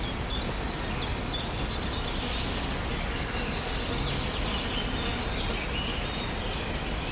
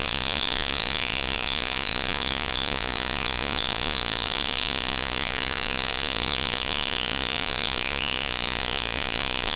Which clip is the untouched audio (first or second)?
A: first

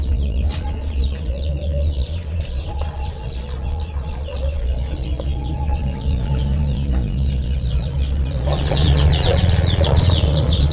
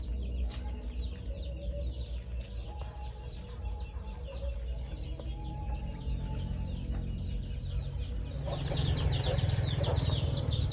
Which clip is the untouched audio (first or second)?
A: second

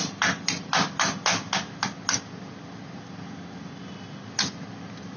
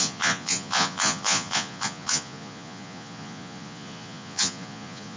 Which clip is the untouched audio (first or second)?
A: first